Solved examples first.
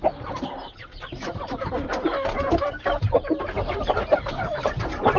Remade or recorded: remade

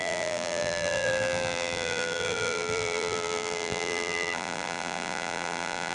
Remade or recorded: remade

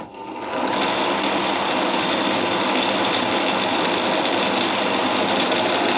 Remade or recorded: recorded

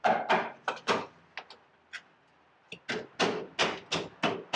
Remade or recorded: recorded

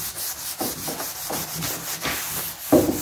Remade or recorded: recorded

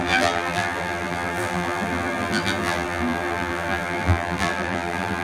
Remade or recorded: remade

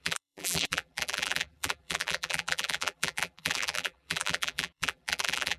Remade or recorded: remade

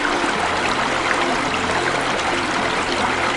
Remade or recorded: recorded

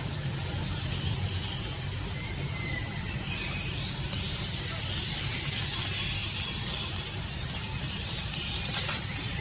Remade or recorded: remade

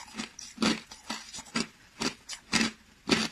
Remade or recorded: remade